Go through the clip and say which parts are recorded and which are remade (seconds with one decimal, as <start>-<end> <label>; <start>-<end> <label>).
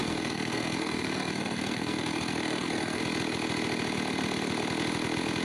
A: 0.0-3.0 remade; 3.0-5.4 recorded